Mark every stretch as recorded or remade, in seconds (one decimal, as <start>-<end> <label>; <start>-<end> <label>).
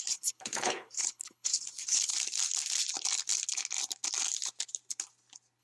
0.0-2.1 remade; 2.1-5.6 recorded